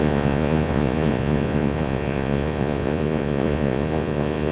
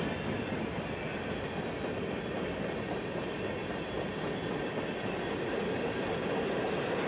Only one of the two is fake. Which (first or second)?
first